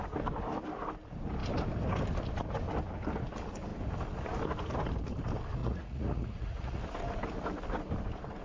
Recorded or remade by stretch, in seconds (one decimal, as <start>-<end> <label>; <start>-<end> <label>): 0.0-5.6 recorded; 5.6-6.8 remade; 6.8-8.4 recorded